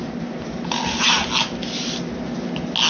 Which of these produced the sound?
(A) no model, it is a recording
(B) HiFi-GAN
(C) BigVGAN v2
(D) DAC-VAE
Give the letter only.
A